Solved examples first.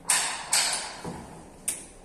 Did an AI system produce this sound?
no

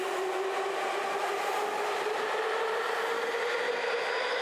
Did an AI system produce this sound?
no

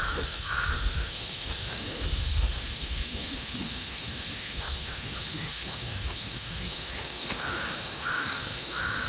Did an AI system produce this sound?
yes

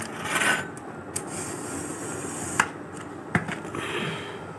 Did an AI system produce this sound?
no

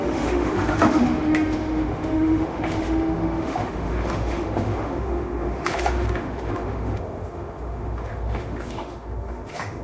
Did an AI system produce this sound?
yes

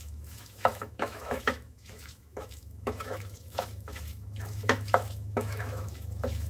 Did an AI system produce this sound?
yes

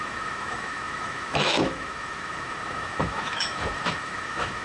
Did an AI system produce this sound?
yes